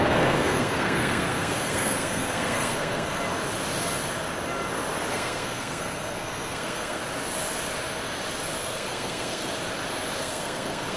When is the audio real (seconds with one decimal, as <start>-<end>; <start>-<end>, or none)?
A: 3.2-5.1; 7.0-8.6; 9.5-10.2